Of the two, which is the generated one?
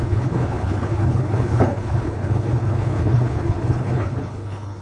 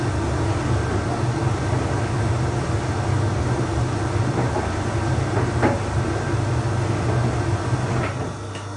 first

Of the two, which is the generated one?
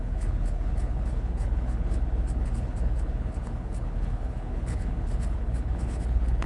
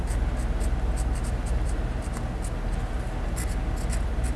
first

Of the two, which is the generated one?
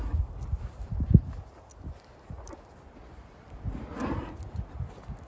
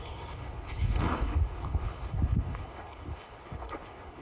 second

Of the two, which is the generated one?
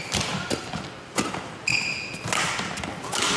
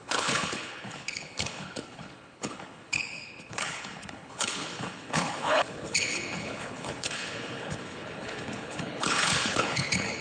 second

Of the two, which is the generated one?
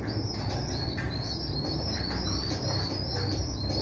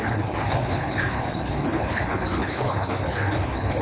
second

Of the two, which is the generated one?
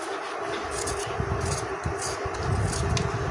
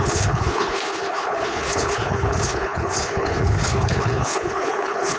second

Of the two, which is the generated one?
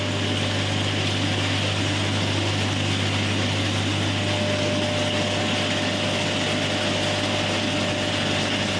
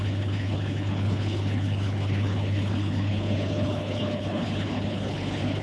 second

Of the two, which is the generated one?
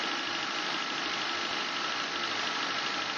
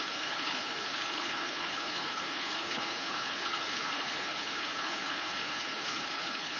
second